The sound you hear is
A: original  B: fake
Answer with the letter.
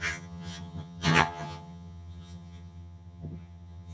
B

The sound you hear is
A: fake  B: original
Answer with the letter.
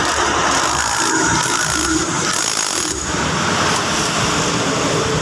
B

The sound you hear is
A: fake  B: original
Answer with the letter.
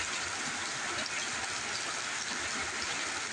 B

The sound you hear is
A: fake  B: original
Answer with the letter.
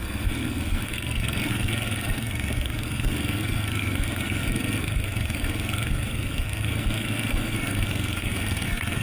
A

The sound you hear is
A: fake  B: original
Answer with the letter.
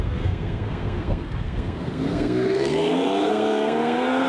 A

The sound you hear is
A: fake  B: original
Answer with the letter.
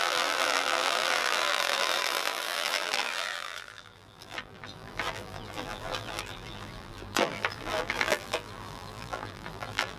A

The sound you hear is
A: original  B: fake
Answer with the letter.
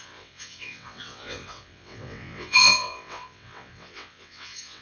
B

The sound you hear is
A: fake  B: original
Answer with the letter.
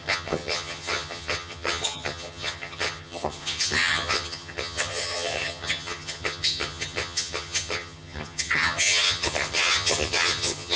A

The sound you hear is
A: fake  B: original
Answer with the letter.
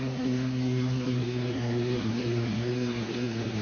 A